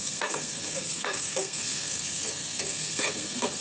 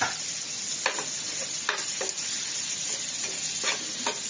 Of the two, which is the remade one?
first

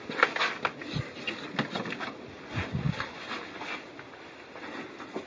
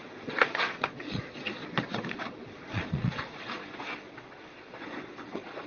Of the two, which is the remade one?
second